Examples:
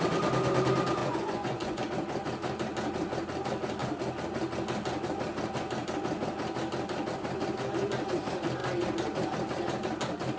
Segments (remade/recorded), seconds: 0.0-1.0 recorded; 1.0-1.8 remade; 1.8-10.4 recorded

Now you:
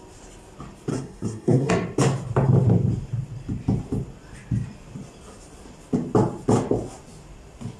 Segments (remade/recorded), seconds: 0.0-0.9 recorded; 0.9-1.7 remade; 1.7-7.8 recorded

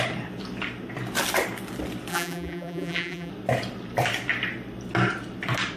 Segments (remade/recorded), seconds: 0.0-2.1 recorded; 2.1-3.3 remade; 3.3-5.8 recorded

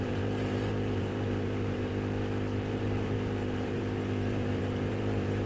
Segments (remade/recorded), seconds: 0.0-1.9 remade; 1.9-2.7 recorded; 2.7-5.5 remade

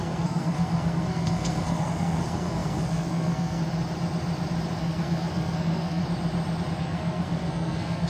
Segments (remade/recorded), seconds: 0.0-3.6 remade; 3.6-4.8 recorded; 4.8-6.0 remade; 6.0-6.8 recorded; 6.8-8.1 remade

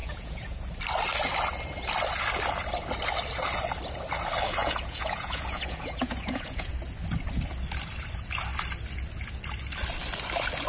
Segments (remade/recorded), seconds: 0.0-0.6 remade; 0.6-4.6 recorded; 4.6-6.7 remade; 6.7-10.7 recorded